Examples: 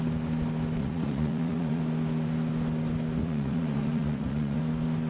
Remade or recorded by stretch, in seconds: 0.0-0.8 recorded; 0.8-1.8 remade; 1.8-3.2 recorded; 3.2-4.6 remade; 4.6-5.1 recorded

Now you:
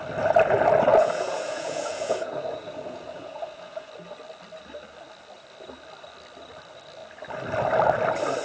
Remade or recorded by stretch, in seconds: 0.0-0.9 recorded; 0.9-3.9 remade; 3.9-8.4 recorded

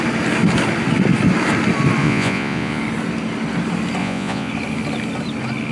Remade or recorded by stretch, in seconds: 0.0-2.0 recorded; 2.0-2.8 remade; 2.8-4.0 recorded; 4.0-4.5 remade; 4.5-5.7 recorded

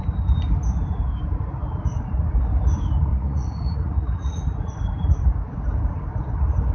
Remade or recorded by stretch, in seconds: 0.0-3.1 recorded; 3.1-4.4 remade; 4.4-6.7 recorded